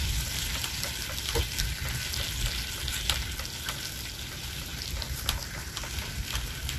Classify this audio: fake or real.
real